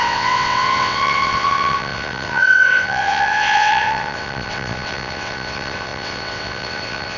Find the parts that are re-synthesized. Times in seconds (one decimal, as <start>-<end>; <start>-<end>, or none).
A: 0.0-7.2